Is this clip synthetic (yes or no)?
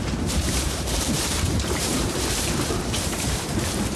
yes